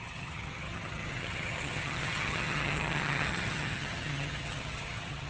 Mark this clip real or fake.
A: fake